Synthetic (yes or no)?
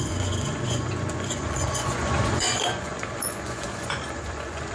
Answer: yes